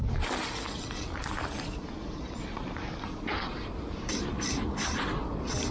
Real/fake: fake